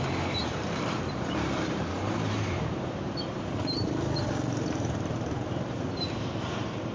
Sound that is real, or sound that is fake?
fake